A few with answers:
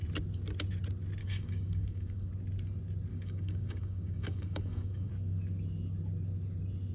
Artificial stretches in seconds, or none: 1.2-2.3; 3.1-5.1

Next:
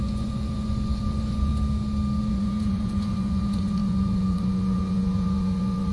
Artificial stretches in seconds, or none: 0.0-1.5; 2.2-5.9

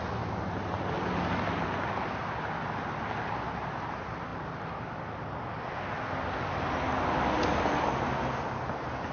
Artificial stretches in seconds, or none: none

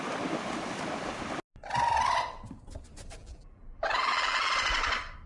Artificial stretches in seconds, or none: 3.2-4.5